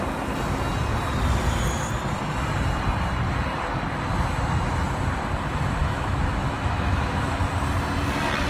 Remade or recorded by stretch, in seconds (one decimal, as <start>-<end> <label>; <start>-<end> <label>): 0.0-5.8 recorded; 5.8-7.5 remade; 7.5-8.5 recorded